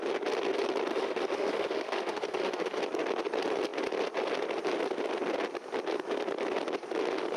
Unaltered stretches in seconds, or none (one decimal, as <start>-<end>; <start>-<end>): 0.0-0.9; 2.8-7.4